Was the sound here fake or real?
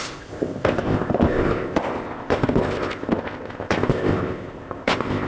fake